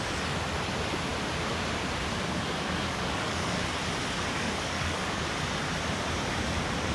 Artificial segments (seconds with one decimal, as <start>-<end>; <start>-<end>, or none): 2.1-3.7; 4.3-5.3